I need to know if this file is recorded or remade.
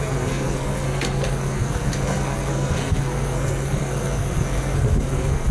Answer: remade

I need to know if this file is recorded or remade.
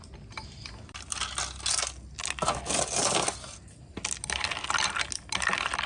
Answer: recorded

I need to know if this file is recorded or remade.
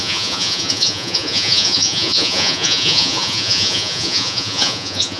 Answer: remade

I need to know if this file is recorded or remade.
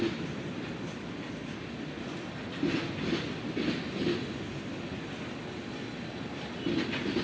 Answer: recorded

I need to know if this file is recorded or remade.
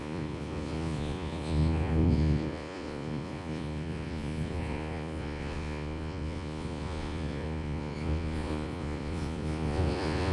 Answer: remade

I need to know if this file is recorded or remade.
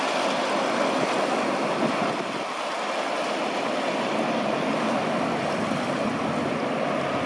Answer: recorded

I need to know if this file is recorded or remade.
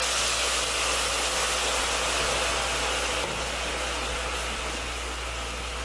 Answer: recorded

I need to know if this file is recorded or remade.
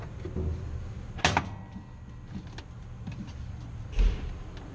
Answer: recorded